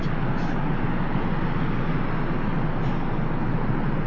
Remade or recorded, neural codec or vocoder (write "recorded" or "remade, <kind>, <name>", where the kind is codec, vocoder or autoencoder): recorded